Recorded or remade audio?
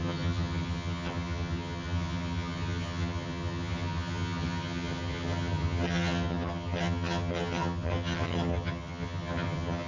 remade